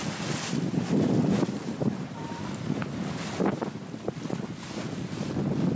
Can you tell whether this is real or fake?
real